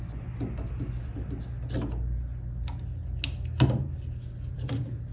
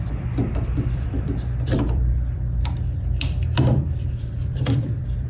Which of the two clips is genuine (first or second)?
first